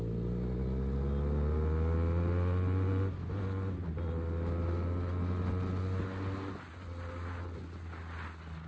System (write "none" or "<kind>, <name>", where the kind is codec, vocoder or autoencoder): none